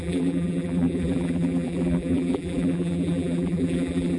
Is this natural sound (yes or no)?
no